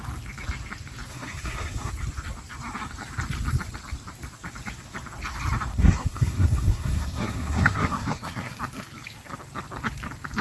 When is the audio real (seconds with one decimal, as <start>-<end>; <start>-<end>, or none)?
0.0-1.1; 1.9-5.7; 8.6-10.4